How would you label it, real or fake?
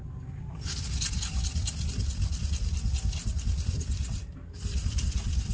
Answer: real